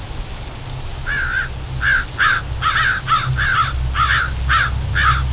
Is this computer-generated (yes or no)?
no